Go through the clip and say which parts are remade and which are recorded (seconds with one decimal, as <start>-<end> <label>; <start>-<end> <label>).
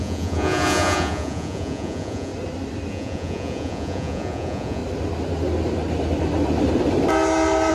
0.0-2.3 remade; 2.3-2.9 recorded; 2.9-4.8 remade; 4.8-7.7 recorded